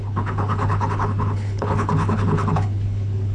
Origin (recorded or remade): remade